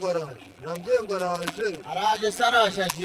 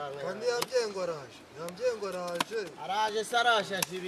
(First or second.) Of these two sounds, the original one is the second